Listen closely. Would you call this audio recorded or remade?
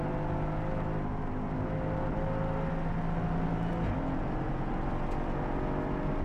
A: recorded